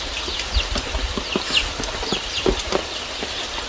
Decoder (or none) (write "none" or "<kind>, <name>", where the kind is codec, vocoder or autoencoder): none